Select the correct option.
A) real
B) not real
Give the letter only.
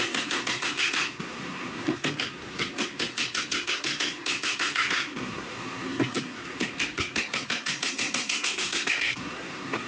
B